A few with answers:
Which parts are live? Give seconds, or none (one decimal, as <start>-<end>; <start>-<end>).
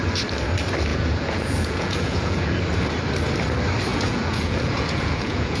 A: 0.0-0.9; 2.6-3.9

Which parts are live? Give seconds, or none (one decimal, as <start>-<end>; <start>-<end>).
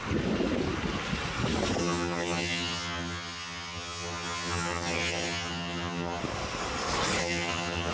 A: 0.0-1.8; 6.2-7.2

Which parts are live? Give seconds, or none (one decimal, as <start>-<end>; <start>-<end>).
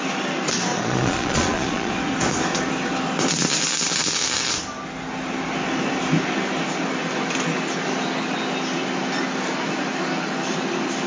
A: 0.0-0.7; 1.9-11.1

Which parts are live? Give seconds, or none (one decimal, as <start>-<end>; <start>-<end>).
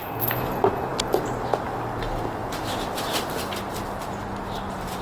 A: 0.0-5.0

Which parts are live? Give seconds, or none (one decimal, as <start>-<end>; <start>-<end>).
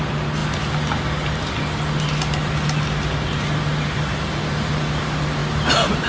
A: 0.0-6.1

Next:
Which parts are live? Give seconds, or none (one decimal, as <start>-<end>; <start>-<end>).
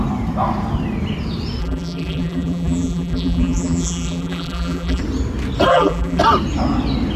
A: 0.0-1.6; 5.0-5.7; 6.2-7.2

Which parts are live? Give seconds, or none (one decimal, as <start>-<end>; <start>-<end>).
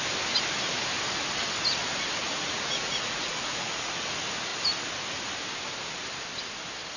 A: 0.0-2.2; 3.9-7.0